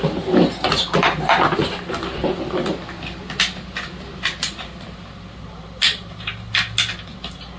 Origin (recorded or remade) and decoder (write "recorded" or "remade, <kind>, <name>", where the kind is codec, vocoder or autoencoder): recorded